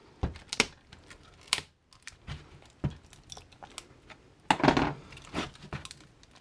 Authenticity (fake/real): real